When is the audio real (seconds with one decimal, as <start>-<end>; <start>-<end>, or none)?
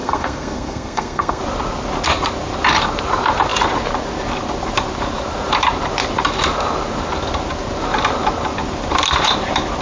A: 1.4-9.8